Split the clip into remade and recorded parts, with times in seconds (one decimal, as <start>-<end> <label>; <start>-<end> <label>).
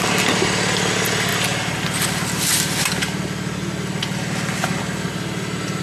0.0-5.8 recorded